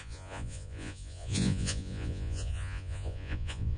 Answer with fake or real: fake